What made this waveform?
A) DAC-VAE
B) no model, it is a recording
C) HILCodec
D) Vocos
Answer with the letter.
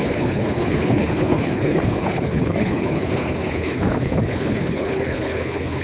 C